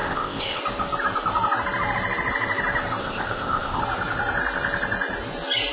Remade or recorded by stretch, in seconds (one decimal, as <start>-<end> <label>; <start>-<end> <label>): 0.0-0.6 remade; 0.6-3.0 recorded; 3.0-3.8 remade; 3.8-5.7 recorded